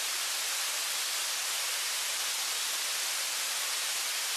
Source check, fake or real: real